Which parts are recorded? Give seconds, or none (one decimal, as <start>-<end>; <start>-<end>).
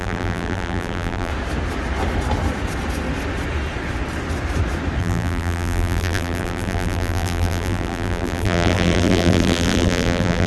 1.3-5.0